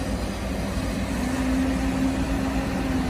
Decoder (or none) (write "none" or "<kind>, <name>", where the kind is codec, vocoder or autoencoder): none